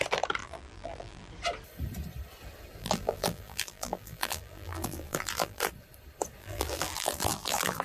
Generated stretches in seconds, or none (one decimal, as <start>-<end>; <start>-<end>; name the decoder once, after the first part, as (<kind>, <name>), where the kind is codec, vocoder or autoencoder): 0.4-1.3 (vocoder, BigVGAN v2); 2.8-5.7; 6.4-7.8